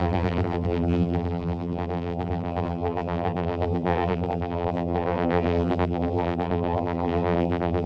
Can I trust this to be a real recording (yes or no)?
no